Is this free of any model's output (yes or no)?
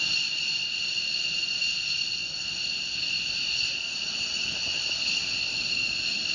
no